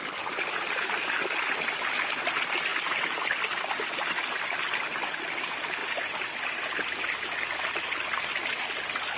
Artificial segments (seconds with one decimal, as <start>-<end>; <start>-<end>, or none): 5.8-7.9